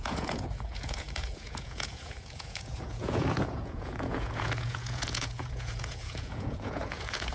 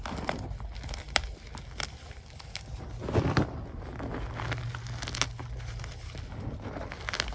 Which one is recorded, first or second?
second